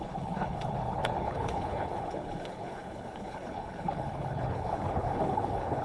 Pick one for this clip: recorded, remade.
remade